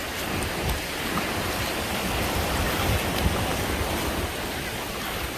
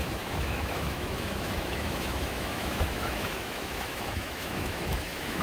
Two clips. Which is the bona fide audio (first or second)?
first